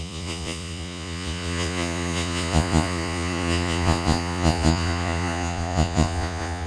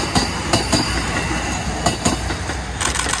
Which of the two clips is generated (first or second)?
first